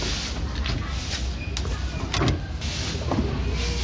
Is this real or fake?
real